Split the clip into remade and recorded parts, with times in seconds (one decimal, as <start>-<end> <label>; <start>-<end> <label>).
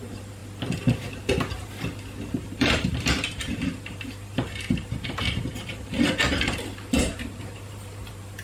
0.0-0.4 remade; 0.4-2.4 recorded; 2.4-8.4 remade